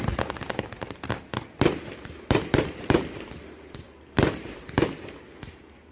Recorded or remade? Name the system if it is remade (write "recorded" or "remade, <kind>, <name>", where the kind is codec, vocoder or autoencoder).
recorded